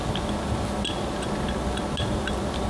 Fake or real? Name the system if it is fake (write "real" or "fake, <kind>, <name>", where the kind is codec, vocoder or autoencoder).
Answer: real